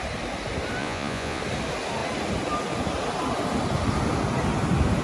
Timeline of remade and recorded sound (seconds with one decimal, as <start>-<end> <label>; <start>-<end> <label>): 0.0-0.8 recorded; 0.8-1.4 remade; 1.4-5.0 recorded